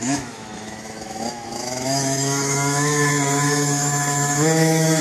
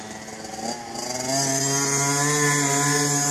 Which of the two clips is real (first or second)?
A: second